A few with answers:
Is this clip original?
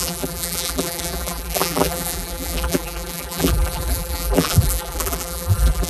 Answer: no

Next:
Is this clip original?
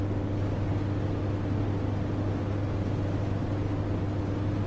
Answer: yes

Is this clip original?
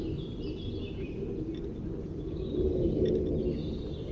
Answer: yes